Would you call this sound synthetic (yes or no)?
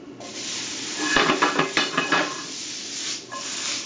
yes